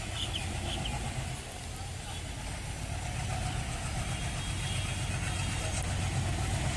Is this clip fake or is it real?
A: real